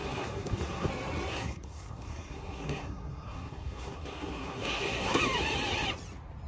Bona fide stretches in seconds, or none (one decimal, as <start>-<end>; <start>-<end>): 0.9-1.3; 5.2-6.5